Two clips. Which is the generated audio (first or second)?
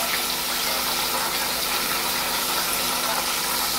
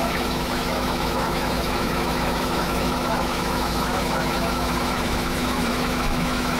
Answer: second